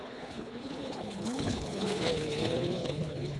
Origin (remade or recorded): remade